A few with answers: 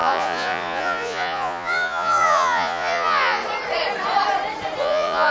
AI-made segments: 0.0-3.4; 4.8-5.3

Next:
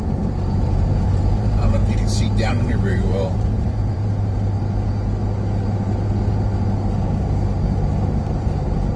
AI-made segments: 0.0-1.8; 2.5-4.6; 8.1-9.0

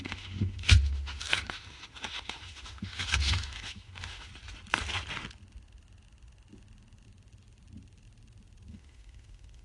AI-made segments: 0.0-4.3; 8.7-9.6

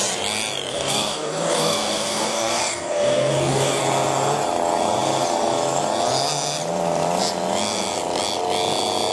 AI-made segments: 0.7-3.8

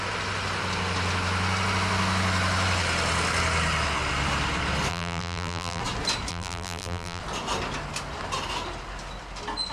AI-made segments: 4.9-5.8; 6.3-7.2

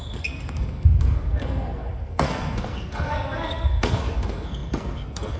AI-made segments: 0.0-5.4